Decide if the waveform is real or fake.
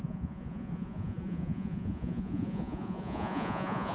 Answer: fake